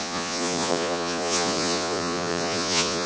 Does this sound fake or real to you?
fake